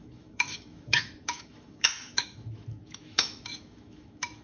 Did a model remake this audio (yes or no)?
yes